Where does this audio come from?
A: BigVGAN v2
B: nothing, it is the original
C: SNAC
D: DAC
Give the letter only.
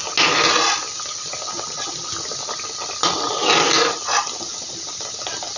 B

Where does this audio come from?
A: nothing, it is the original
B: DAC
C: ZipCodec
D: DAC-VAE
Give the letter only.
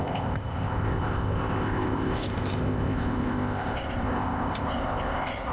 C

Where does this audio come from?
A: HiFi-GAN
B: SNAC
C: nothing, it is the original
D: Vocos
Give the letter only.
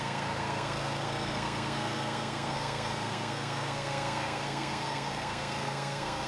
B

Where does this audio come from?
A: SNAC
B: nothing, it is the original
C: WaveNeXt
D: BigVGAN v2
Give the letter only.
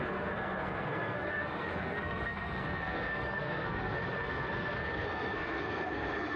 A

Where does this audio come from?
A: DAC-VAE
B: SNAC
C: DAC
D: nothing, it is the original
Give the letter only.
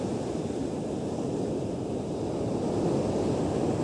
D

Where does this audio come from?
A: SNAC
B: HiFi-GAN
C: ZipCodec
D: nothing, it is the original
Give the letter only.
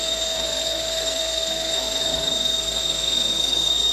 A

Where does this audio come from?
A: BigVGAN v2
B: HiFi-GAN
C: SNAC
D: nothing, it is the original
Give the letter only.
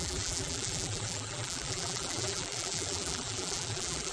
A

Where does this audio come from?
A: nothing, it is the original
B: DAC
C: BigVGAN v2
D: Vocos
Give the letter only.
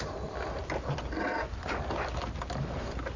A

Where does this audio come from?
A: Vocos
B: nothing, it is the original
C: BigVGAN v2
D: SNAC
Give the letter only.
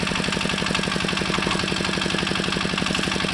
B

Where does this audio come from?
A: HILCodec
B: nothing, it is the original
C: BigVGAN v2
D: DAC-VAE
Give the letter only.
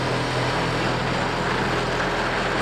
B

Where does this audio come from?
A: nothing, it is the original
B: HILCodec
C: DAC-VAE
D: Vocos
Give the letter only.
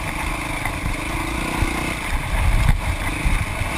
A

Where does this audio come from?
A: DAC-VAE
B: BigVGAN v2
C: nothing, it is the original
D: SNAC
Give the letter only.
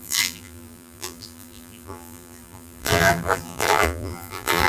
B